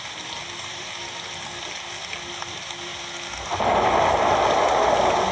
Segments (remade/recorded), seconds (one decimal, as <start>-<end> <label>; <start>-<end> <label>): 0.0-5.3 recorded